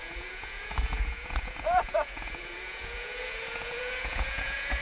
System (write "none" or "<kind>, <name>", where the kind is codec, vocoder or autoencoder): vocoder, Vocos